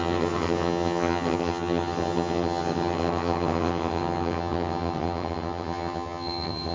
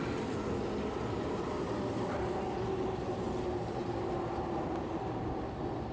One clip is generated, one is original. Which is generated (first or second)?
first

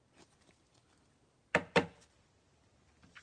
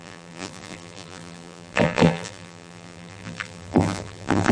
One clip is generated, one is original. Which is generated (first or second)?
second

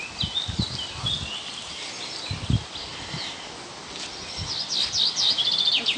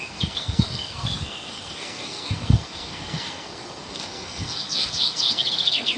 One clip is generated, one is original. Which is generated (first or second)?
second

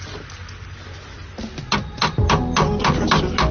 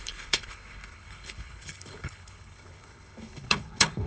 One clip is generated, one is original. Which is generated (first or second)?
second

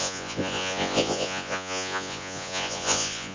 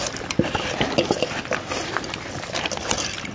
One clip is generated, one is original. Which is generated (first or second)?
first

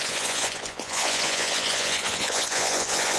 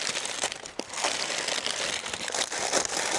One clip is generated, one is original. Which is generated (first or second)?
first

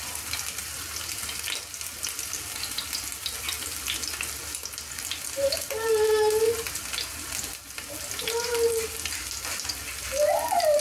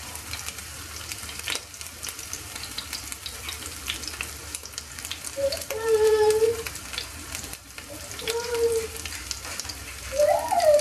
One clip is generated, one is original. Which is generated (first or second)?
second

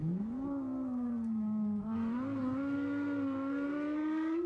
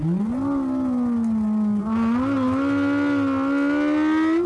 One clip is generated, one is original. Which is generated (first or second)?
first